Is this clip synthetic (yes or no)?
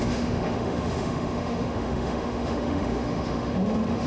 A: yes